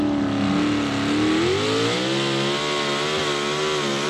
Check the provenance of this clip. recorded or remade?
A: recorded